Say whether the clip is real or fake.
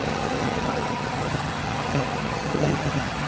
fake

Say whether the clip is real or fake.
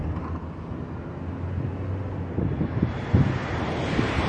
real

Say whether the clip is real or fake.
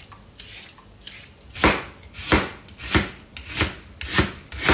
real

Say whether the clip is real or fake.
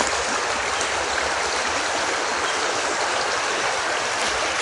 real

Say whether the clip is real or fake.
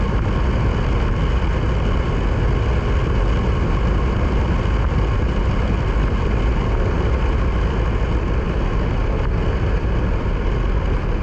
real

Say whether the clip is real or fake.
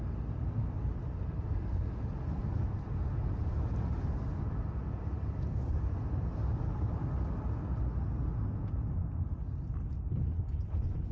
real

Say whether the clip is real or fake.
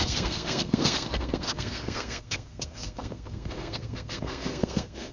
fake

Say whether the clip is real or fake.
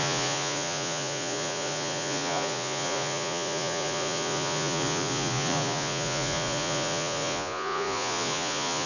fake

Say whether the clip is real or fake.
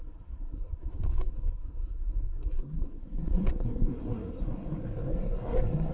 fake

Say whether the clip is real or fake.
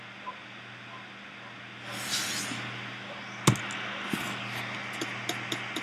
real